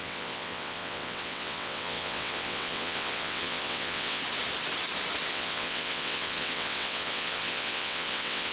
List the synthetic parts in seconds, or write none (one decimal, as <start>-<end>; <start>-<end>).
0.0-4.2; 5.3-8.5